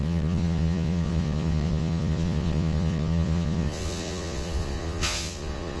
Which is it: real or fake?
fake